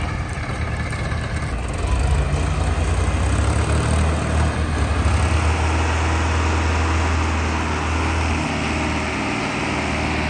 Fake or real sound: real